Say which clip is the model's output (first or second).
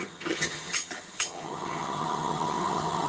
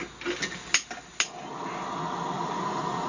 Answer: first